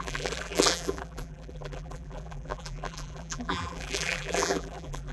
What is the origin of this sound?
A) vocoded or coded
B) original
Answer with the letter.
A